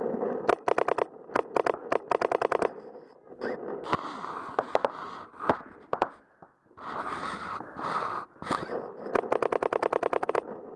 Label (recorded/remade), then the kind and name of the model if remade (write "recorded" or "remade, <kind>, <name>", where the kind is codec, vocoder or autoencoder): recorded